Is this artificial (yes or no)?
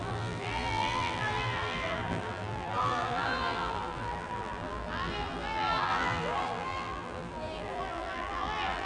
yes